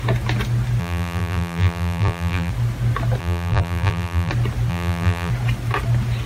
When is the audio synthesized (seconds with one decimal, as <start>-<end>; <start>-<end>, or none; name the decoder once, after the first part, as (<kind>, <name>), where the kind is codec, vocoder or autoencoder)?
0.8-2.5 (vocoder, BigVGAN v2); 3.2-4.3; 4.7-5.3